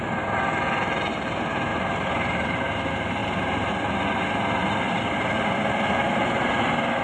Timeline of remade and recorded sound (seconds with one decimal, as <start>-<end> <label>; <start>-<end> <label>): 0.0-1.7 recorded; 1.7-2.7 remade; 2.7-3.2 recorded; 3.2-3.7 remade; 3.7-7.0 recorded